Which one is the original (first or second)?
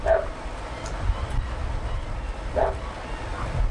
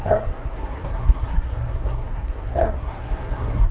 first